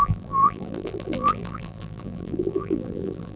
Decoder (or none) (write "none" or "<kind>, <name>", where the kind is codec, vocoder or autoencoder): vocoder, BigVGAN v2